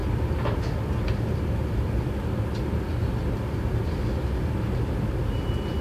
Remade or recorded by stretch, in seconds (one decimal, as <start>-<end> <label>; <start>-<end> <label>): 0.0-5.8 recorded